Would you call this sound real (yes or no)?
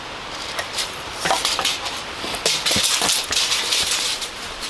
no